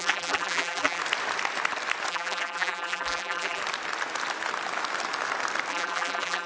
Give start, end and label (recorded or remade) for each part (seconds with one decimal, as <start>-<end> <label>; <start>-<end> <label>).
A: 0.0-1.0 remade; 1.0-2.1 recorded; 2.1-3.6 remade; 3.6-5.7 recorded; 5.7-6.5 remade